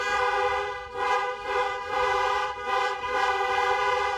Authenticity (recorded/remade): recorded